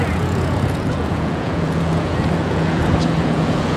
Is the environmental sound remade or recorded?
remade